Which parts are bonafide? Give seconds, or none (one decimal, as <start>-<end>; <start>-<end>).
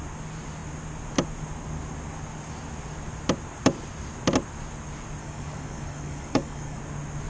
0.0-5.2; 6.8-7.3